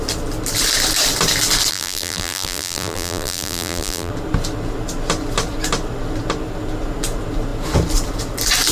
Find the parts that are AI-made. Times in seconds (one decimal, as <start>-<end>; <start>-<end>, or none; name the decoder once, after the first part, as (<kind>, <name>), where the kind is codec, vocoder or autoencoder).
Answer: 1.7-4.1 (vocoder, BigVGAN v2)